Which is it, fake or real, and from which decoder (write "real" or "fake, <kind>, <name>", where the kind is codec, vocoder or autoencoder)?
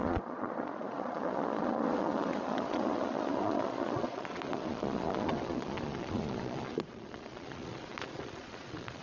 fake, vocoder, Vocos